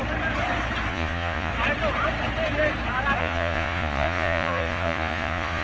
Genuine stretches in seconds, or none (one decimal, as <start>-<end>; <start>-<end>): 0.0-0.9; 1.5-3.2